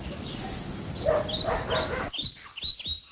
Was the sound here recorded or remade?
recorded